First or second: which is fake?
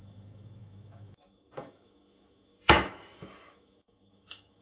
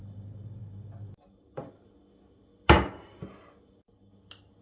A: first